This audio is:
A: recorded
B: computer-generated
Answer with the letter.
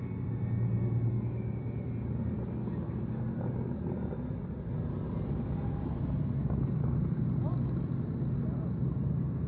A